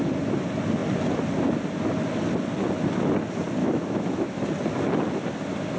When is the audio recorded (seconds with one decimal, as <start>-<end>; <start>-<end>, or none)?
0.0-3.6; 4.4-5.8